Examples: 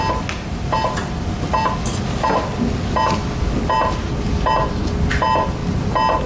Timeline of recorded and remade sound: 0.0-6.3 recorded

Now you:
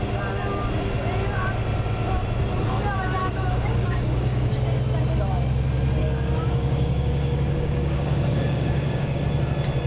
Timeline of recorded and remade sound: 0.0-3.2 recorded; 3.2-4.5 remade; 4.5-6.0 recorded; 6.0-9.2 remade; 9.2-9.9 recorded

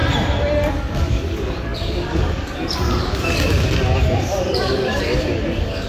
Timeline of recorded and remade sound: 0.0-0.7 recorded; 0.7-5.9 remade

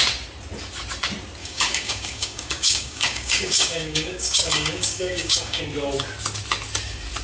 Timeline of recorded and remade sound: 0.0-1.4 recorded; 1.4-5.6 remade; 5.6-7.2 recorded

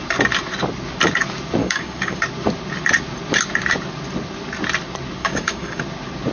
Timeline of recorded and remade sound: 0.0-1.6 recorded; 1.6-2.2 remade; 2.2-5.2 recorded; 5.2-5.8 remade; 5.8-6.3 recorded

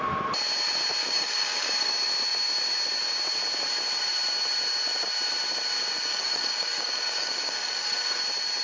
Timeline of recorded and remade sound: 0.0-1.0 recorded; 1.0-1.9 remade; 1.9-6.1 recorded; 6.1-8.2 remade; 8.2-8.6 recorded